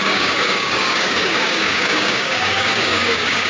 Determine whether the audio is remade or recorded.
remade